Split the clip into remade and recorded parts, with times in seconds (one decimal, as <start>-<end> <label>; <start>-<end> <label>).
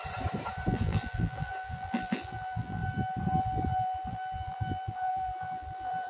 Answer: 0.0-0.7 recorded; 0.7-2.8 remade; 2.8-3.4 recorded; 3.4-6.1 remade